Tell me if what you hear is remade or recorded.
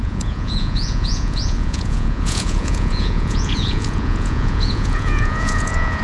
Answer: remade